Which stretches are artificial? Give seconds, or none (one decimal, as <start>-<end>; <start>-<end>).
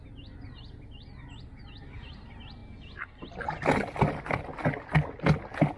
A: none